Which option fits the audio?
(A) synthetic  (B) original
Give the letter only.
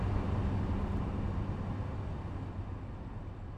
B